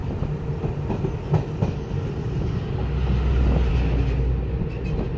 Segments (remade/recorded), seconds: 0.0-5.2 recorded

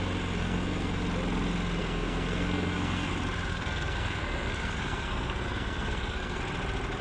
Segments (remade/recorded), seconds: 0.0-0.4 recorded; 0.4-1.0 remade; 1.0-1.8 recorded; 1.8-3.1 remade; 3.1-3.5 recorded; 3.5-6.4 remade; 6.4-7.0 recorded

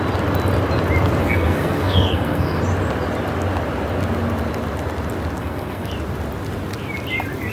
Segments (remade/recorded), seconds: 0.0-1.2 recorded; 1.2-2.6 remade; 2.6-5.4 recorded; 5.4-5.9 remade; 5.9-7.5 recorded

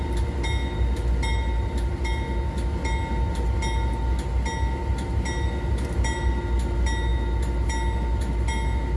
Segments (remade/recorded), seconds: 0.0-9.0 recorded